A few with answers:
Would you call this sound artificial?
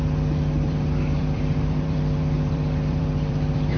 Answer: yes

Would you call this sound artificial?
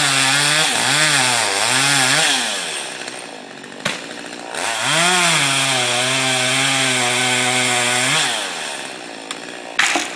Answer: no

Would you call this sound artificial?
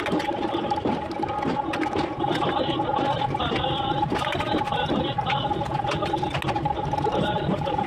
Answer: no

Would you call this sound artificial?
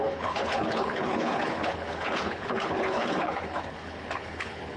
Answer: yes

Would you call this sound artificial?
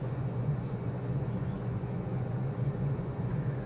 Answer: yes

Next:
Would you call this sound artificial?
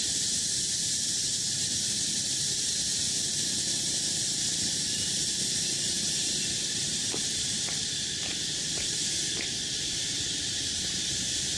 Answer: yes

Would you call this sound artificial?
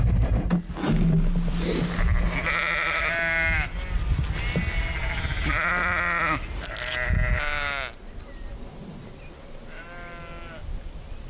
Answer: no